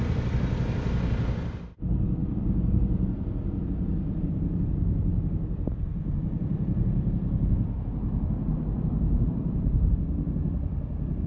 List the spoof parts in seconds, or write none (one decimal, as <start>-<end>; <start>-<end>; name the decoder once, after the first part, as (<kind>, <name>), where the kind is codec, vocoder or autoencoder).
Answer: none